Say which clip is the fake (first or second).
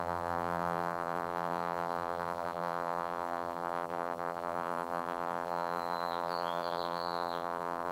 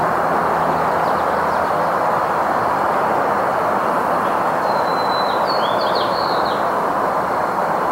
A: first